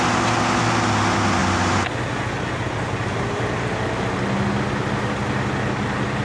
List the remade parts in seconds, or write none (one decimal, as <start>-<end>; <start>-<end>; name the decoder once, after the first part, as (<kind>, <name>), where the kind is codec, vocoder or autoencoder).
none